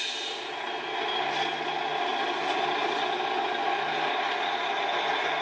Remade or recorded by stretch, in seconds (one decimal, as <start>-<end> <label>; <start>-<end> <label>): 0.0-5.4 recorded